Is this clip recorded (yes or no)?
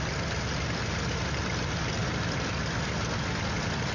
yes